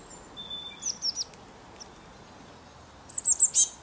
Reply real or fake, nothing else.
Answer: real